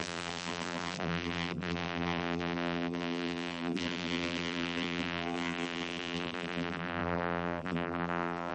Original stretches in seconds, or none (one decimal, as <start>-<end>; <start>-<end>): none

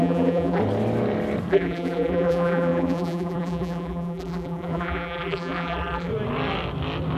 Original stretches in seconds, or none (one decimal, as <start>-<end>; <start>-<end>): 0.6-1.5; 6.1-7.2

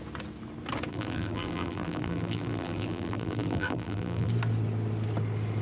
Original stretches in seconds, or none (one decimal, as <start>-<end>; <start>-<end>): 0.0-0.9; 4.3-5.6

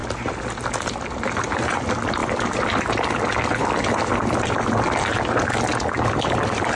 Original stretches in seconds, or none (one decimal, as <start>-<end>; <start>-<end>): 2.2-6.2

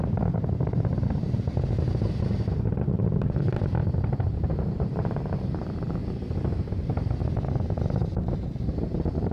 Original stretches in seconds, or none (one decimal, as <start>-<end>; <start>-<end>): 6.0-6.7; 7.2-7.8

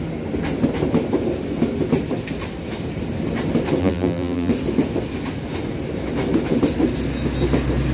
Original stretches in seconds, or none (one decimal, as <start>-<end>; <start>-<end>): 0.0-3.8; 4.5-7.9

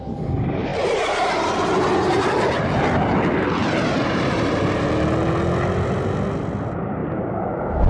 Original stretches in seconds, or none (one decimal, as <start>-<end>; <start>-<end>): 0.0-3.6; 4.9-7.0; 7.5-7.9

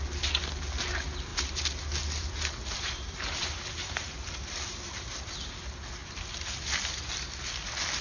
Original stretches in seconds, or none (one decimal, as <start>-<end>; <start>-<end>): 0.0-1.3; 5.3-8.0